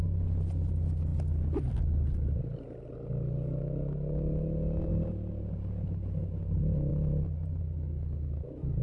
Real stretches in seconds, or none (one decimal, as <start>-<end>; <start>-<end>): 0.0-8.8